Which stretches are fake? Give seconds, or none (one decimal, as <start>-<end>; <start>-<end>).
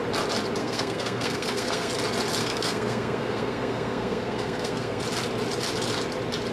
0.6-1.9; 2.4-5.0